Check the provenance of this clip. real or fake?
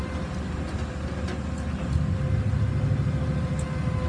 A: real